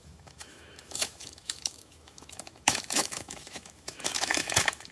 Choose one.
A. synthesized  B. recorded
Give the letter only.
A